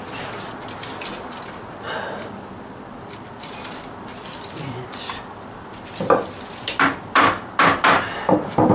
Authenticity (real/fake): fake